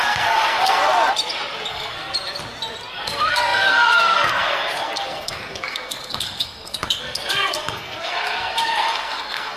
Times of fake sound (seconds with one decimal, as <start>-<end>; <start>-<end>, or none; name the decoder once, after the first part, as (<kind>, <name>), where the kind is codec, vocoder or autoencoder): 0.0-0.8 (codec, SNAC); 1.7-2.1; 2.9-9.6